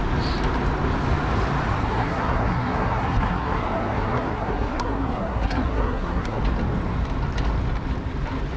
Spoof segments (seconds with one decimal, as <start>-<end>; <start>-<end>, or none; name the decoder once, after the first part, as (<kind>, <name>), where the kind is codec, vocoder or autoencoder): 1.8-6.4 (codec, SNAC)